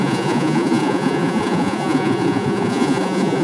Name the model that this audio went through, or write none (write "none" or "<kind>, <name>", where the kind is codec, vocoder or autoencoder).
vocoder, Vocos